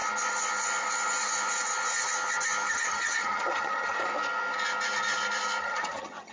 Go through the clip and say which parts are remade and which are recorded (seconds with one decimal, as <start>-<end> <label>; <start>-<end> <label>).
0.0-2.7 recorded; 2.7-4.1 remade; 4.1-5.6 recorded; 5.6-6.3 remade